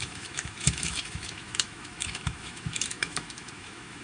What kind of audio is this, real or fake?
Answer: fake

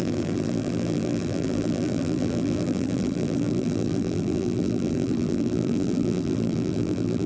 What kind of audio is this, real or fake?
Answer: fake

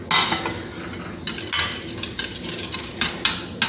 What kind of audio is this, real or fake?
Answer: real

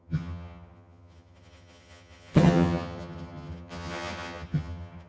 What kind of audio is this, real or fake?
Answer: fake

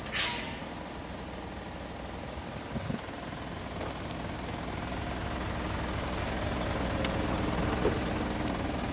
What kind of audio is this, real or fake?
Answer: real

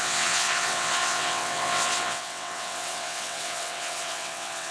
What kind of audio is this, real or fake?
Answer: fake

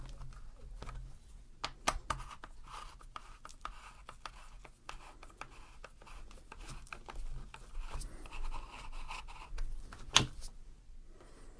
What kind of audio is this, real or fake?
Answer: real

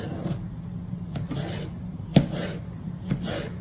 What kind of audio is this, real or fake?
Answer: real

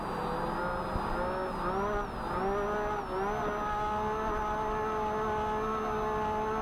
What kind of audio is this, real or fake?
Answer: real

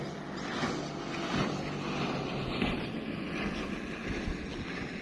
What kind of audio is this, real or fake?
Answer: real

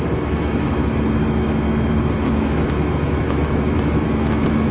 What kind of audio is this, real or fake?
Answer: fake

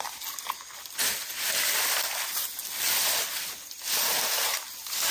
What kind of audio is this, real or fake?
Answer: real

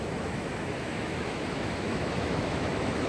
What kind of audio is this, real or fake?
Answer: fake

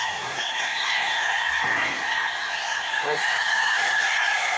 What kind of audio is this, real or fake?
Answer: fake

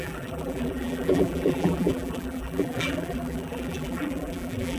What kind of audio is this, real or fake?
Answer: fake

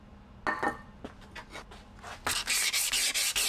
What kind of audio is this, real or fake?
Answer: real